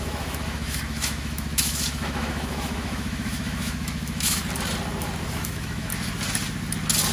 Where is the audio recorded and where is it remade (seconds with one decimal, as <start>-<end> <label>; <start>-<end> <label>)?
0.0-4.4 remade; 4.4-5.3 recorded; 5.3-5.9 remade; 5.9-7.1 recorded